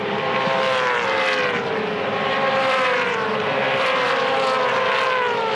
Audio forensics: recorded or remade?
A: recorded